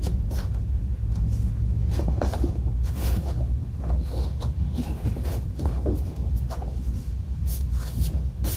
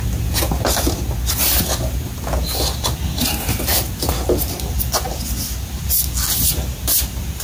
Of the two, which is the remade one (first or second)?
first